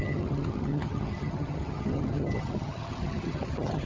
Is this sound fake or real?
fake